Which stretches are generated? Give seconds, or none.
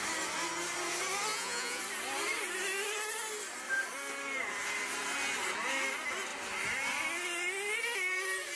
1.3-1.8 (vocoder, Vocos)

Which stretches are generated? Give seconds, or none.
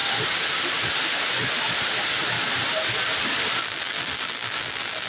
3.6-5.1 (vocoder, BigVGAN v2)